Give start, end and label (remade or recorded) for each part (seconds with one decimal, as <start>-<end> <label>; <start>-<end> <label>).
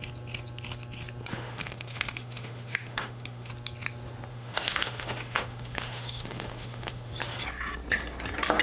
0.0-1.3 recorded; 1.3-3.5 remade; 3.5-4.3 recorded; 4.3-7.1 remade; 7.1-8.6 recorded